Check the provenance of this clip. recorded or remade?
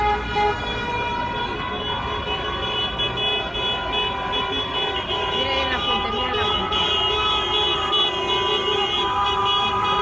recorded